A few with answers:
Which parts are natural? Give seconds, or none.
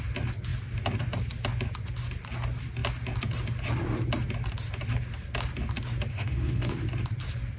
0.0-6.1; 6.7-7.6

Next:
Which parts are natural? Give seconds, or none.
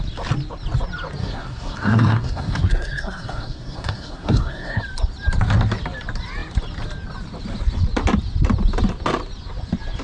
0.0-1.2; 4.8-10.0